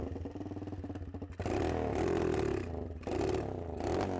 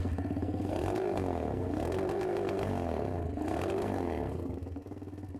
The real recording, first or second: first